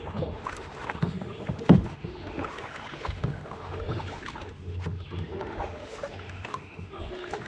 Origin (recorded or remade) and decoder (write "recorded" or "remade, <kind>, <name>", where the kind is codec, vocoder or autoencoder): remade, autoencoder, DAC-VAE